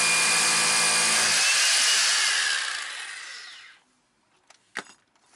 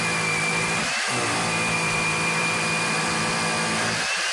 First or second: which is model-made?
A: second